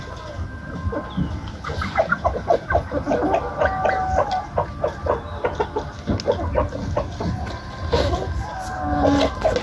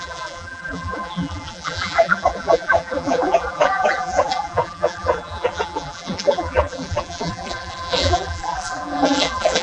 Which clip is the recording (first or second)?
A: first